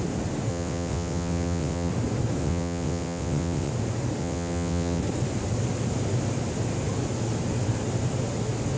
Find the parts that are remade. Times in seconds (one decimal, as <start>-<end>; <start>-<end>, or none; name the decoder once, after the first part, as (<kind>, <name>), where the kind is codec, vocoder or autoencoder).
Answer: 0.5-1.9 (vocoder, WaveNeXt); 2.4-3.7; 4.2-5.0